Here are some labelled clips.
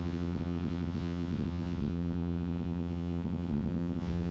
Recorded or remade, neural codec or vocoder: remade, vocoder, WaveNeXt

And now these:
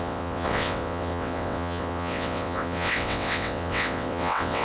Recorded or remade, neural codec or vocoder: remade, vocoder, WaveNeXt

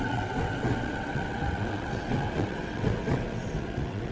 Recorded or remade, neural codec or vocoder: remade, vocoder, WaveNeXt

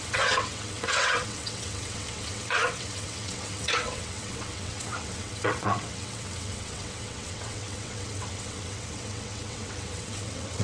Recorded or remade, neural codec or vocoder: remade, vocoder, WaveNeXt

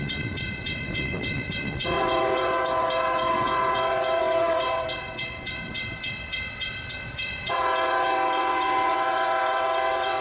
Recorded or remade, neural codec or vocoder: remade, vocoder, WaveNeXt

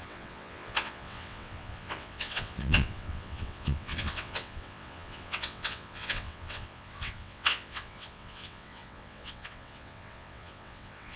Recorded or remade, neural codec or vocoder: remade, vocoder, WaveNeXt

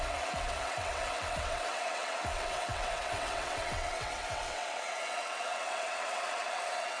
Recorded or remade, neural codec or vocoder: remade, vocoder, WaveNeXt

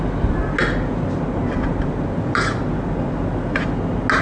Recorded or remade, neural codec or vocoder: recorded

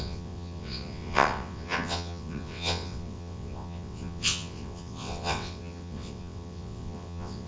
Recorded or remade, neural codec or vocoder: remade, vocoder, WaveNeXt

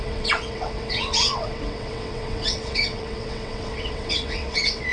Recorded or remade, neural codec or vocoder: remade, vocoder, WaveNeXt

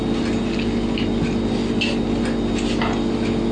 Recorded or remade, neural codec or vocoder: recorded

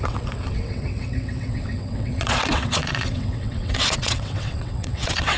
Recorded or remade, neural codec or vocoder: remade, vocoder, WaveNeXt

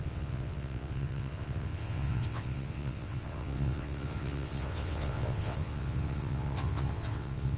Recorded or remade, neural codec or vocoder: remade, vocoder, WaveNeXt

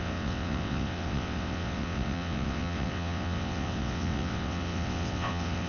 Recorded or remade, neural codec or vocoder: remade, vocoder, WaveNeXt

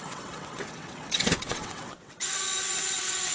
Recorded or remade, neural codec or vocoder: remade, vocoder, WaveNeXt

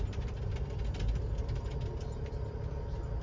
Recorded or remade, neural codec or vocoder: recorded